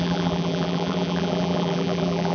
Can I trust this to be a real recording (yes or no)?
no